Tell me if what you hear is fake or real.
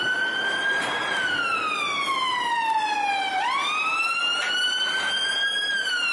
real